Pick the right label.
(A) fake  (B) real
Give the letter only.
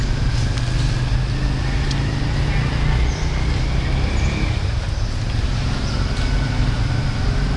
B